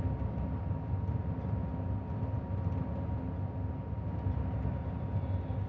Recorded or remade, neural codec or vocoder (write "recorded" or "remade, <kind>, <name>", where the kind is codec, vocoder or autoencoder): recorded